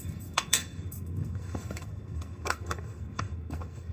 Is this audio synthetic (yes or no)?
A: yes